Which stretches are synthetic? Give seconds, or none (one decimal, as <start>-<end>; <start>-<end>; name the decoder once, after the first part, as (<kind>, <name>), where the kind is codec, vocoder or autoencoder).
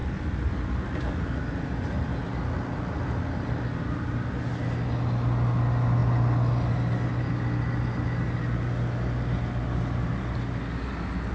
none